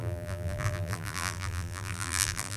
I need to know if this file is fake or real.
fake